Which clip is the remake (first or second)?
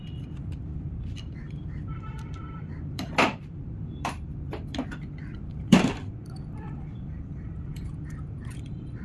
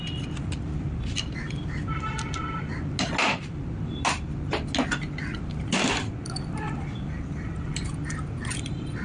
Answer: first